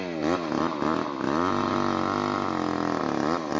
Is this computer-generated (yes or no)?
no